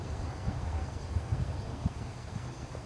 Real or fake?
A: fake